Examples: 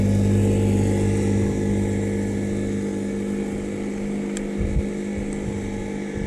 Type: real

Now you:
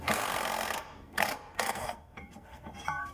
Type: fake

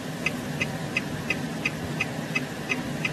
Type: real